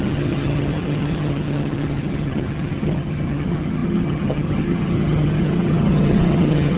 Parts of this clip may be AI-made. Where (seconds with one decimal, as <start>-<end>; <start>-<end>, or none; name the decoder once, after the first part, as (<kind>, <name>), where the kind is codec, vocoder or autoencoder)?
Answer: 0.0-6.8 (vocoder, HiFi-GAN)